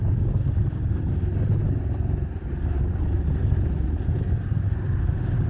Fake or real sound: real